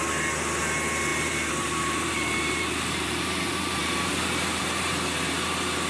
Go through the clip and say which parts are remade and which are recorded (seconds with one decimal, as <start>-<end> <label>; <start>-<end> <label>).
0.0-1.1 recorded; 1.1-4.6 remade; 4.6-5.9 recorded